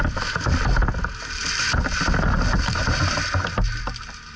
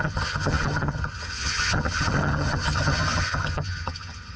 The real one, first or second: first